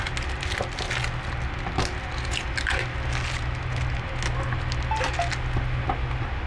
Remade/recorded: recorded